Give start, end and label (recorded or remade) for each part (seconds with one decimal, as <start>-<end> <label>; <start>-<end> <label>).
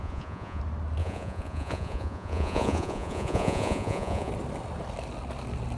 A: 0.0-0.6 remade; 0.6-1.0 recorded; 1.0-4.3 remade; 4.3-5.8 recorded